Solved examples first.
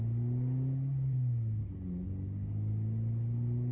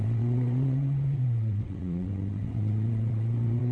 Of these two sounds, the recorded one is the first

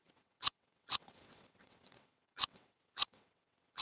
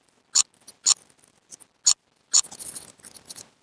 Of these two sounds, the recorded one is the second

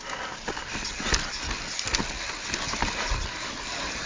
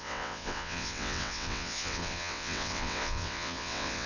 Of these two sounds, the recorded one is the first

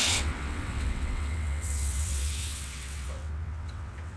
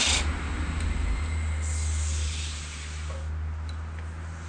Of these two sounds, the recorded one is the second